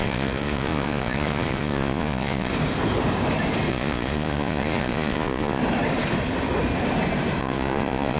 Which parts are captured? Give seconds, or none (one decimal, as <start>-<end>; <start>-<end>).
2.5-3.7; 5.6-7.4